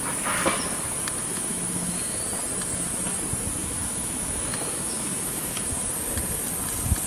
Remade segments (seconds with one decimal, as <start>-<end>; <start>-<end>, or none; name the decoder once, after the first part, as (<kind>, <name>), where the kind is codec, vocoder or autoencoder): 1.2-2.2 (autoencoder, DAC-VAE); 3.6-5.7